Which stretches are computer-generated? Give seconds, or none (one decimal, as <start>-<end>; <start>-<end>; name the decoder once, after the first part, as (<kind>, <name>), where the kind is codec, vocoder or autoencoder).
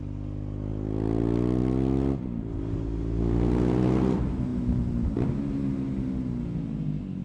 0.7-1.2 (vocoder, BigVGAN v2); 1.6-2.6